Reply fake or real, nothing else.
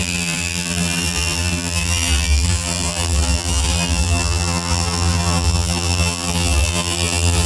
fake